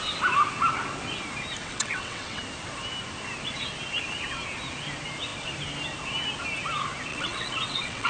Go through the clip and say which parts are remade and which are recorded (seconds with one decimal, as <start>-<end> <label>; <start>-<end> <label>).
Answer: 0.0-1.6 recorded; 1.6-2.4 remade; 2.4-7.1 recorded; 7.1-8.1 remade